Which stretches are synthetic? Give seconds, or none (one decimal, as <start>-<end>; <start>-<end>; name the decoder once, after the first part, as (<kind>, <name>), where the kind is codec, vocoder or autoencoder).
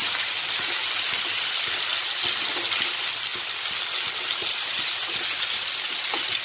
0.0-1.2 (vocoder, BigVGAN v2)